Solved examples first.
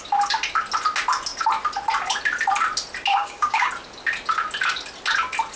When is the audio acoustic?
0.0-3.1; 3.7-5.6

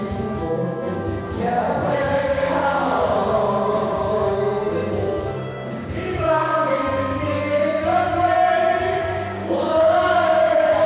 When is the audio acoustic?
8.1-8.8

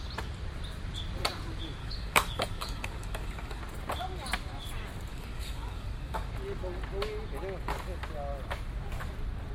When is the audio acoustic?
0.0-1.8; 3.6-5.1; 6.3-9.5

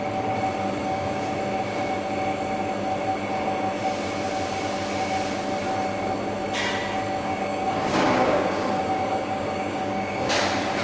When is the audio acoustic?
0.0-0.8; 1.3-7.2; 10.3-10.8

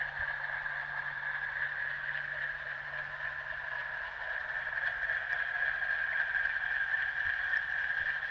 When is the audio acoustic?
0.0-8.3